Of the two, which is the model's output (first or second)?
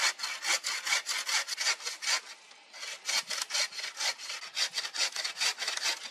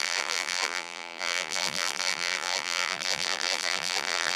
second